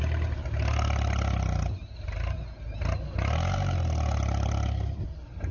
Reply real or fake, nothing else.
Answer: real